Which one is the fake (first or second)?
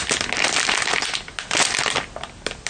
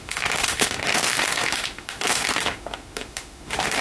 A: second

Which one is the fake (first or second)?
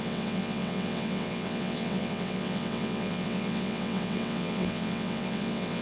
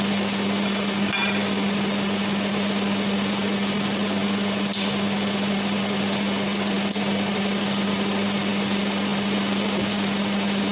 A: first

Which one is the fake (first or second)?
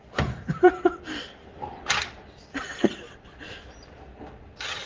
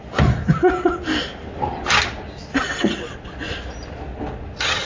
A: first